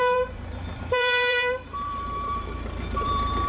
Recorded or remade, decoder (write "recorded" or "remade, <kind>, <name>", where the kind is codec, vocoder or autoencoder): remade, vocoder, BigVGAN v2